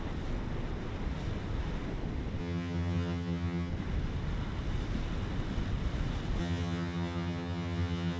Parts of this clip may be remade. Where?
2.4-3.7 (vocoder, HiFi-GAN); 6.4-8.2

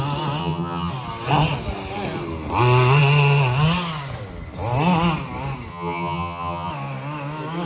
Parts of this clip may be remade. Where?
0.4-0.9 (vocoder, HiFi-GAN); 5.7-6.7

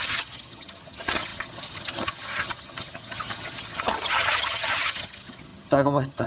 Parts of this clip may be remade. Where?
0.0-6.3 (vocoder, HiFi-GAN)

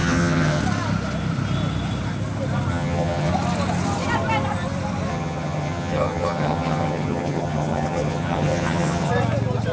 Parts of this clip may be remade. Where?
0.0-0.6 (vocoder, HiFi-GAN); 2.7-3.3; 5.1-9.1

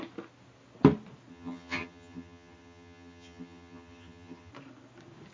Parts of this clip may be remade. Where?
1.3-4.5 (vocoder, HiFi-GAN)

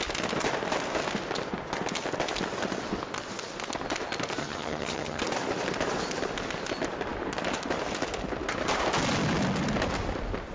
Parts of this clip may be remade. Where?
4.4-5.2 (vocoder, HiFi-GAN)